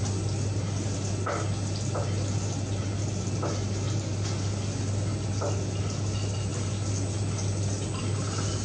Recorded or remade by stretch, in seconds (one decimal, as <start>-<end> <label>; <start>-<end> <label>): 0.0-8.6 recorded

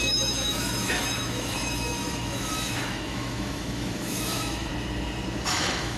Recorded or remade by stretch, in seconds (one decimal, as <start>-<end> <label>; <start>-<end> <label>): 0.0-4.7 remade; 4.7-5.5 recorded; 5.5-6.0 remade

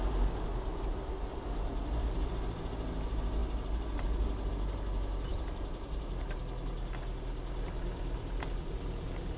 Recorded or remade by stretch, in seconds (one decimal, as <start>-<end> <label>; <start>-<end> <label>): 0.0-3.4 recorded; 3.4-4.5 remade; 4.5-5.3 recorded; 5.3-6.4 remade; 6.4-9.4 recorded

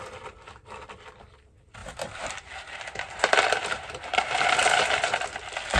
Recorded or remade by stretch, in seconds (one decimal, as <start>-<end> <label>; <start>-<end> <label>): 0.0-1.8 recorded; 1.8-5.3 remade; 5.3-5.8 recorded